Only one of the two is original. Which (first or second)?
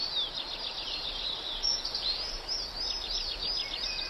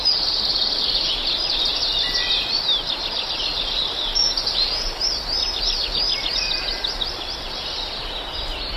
first